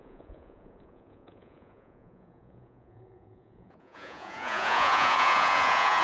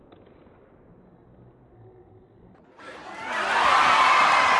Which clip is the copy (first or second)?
first